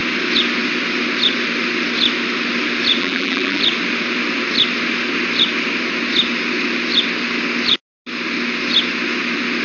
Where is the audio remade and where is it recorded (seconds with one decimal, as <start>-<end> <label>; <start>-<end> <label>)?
0.0-3.0 recorded; 3.0-3.6 remade; 3.6-9.6 recorded